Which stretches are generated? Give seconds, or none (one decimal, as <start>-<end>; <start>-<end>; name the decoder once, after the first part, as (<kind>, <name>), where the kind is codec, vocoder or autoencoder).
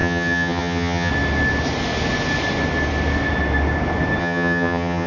0.0-1.1 (vocoder, HiFi-GAN); 4.2-5.1